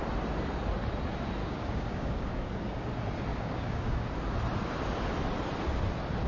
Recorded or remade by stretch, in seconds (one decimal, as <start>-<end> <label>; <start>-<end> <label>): 0.0-1.4 recorded; 1.4-2.9 remade; 2.9-3.3 recorded; 3.3-4.1 remade; 4.1-6.3 recorded